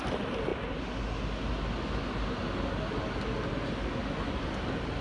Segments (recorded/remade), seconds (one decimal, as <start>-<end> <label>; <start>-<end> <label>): 0.0-5.0 recorded